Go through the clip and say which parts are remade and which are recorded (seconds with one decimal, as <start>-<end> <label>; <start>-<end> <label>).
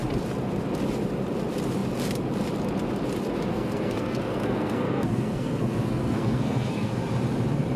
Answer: 0.0-3.5 recorded; 3.5-6.9 remade; 6.9-7.8 recorded